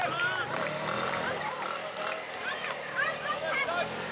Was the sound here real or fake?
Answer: fake